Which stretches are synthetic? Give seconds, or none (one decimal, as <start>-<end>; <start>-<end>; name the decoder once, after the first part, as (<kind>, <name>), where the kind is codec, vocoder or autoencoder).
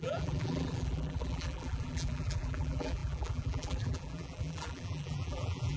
0.0-5.8 (vocoder, BigVGAN v2)